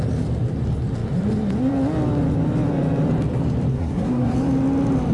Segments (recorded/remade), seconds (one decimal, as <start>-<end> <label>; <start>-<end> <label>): 0.0-3.7 recorded; 3.7-4.3 remade; 4.3-5.1 recorded